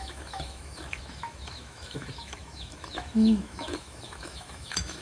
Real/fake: fake